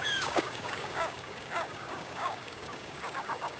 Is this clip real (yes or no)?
no